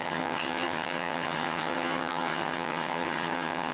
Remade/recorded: remade